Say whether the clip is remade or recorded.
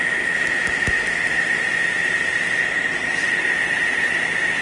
recorded